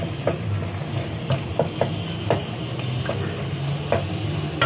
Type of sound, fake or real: real